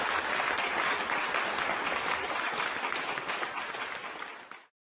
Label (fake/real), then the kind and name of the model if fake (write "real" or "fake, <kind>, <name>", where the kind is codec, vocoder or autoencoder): real